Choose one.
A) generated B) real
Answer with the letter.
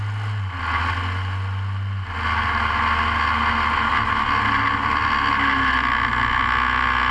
B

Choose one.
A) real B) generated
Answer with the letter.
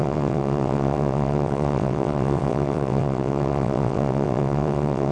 B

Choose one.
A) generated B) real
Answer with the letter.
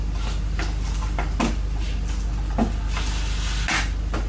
B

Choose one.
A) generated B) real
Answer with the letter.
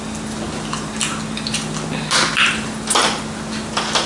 A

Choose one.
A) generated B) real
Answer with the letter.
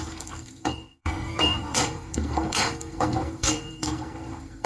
A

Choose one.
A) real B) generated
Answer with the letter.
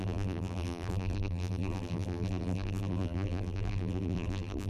B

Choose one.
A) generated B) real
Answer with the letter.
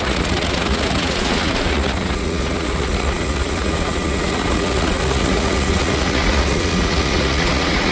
A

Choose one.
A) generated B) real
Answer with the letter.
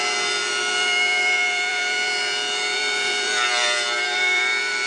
A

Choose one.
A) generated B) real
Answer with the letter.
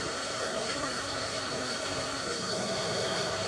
A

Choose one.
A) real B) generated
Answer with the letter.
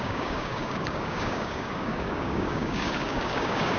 B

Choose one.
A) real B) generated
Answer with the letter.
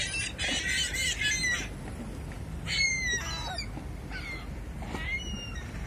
A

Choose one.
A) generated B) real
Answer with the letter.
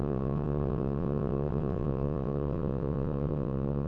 A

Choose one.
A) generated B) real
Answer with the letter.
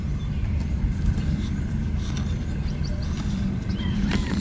B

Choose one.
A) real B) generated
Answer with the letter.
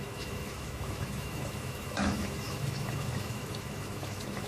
B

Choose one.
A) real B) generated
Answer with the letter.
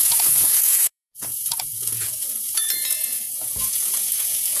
B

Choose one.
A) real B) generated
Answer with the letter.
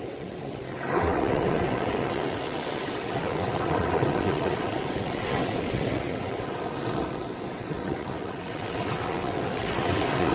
B